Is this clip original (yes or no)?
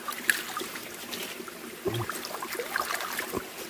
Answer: yes